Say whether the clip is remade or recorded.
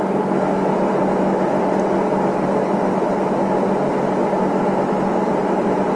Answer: recorded